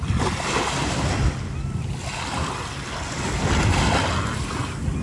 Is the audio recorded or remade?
recorded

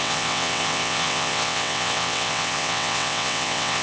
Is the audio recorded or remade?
remade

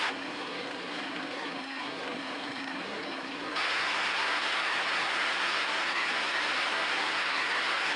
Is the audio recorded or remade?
remade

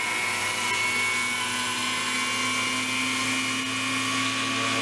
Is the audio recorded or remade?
recorded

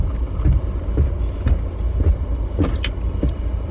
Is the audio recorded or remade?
recorded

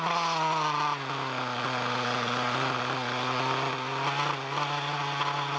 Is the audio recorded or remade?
recorded